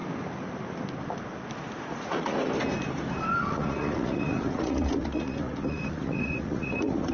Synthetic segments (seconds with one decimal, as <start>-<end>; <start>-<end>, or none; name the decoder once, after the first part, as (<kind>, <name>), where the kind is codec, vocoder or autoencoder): 1.9-2.4 (vocoder, Vocos); 3.4-7.1